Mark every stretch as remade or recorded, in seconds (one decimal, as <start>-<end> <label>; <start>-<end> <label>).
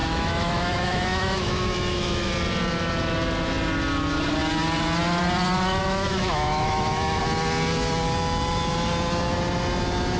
0.0-2.3 remade; 2.3-5.8 recorded; 5.8-7.2 remade; 7.2-10.2 recorded